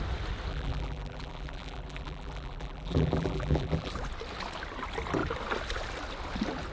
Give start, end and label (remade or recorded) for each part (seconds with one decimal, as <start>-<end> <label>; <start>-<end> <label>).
0.0-0.5 recorded; 0.5-3.9 remade; 3.9-6.7 recorded